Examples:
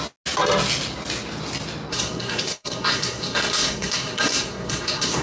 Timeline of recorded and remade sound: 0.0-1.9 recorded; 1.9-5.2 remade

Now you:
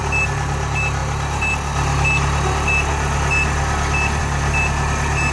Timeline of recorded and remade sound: 0.0-5.3 recorded

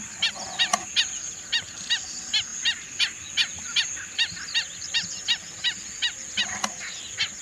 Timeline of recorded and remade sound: 0.0-7.4 recorded

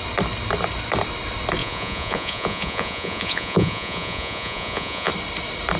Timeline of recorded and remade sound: 0.0-1.6 recorded; 1.6-5.1 remade; 5.1-5.8 recorded